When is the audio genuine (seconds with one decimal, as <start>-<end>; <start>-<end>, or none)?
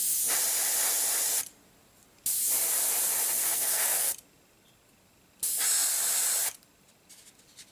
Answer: 0.0-3.4; 4.1-7.7